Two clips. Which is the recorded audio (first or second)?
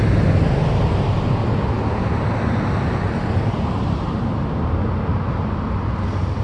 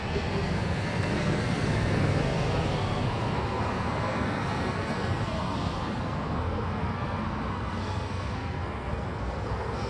first